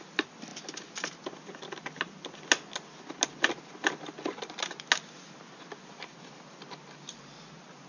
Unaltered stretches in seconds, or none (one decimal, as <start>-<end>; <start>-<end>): 0.0-7.9